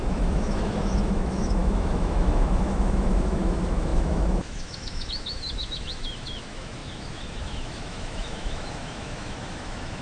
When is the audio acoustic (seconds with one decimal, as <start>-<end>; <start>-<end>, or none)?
none